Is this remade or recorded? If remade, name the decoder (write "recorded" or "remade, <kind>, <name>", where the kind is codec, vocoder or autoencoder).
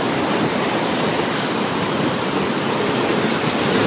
recorded